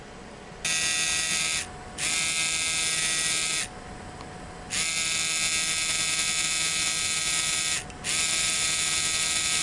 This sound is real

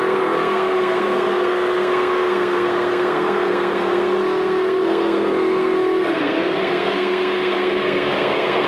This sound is fake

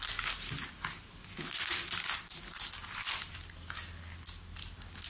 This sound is real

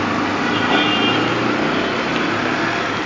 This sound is real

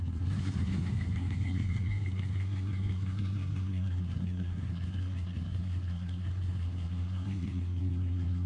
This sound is fake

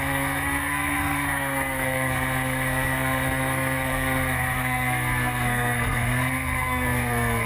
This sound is fake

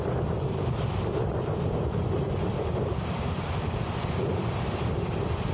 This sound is real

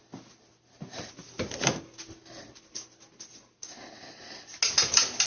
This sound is real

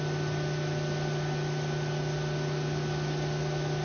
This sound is real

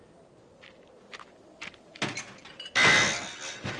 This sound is real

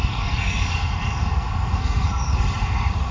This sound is fake